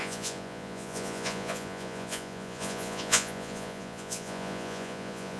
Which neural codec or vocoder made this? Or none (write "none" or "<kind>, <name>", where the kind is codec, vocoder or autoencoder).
vocoder, Vocos